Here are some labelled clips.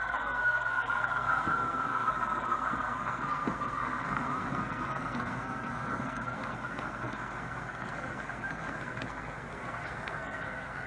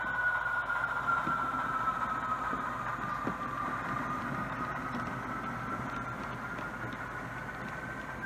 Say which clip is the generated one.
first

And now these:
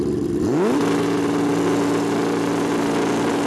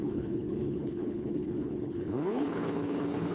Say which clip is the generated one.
second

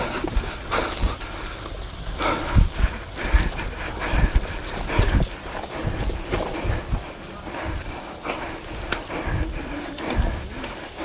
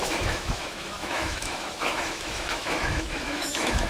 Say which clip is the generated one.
second